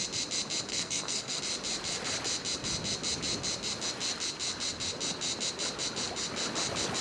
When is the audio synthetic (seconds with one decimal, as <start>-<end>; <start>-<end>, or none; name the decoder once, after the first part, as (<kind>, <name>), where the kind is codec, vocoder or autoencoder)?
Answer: 0.7-1.4 (codec, SNAC)